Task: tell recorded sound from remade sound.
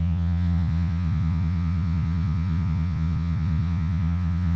remade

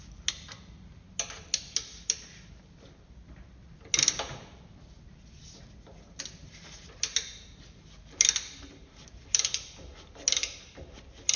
recorded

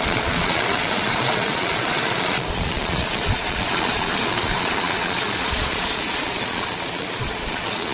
remade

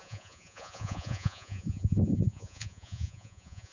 remade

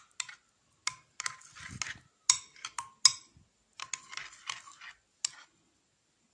recorded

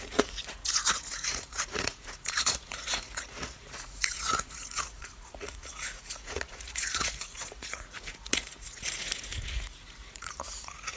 remade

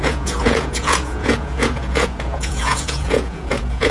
remade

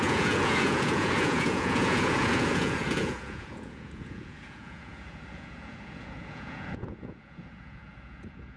remade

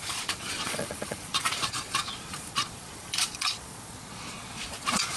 remade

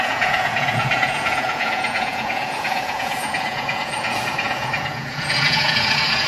remade